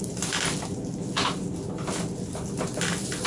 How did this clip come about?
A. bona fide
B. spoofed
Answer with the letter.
A